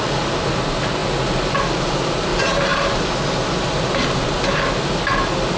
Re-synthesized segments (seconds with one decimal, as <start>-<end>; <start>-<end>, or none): 2.3-3.0

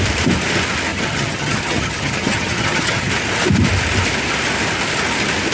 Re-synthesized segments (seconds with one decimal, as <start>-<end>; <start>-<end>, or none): 0.9-3.1